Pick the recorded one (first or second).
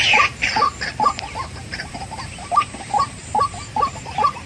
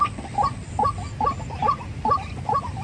second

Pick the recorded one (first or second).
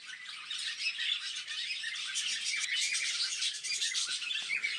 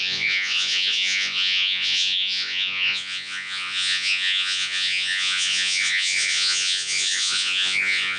first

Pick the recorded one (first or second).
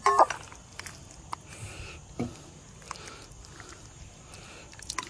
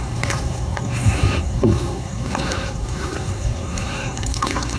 first